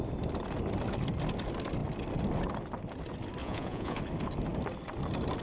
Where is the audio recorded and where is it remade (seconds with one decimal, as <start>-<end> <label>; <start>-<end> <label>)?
0.0-3.4 recorded; 3.4-4.0 remade; 4.0-5.4 recorded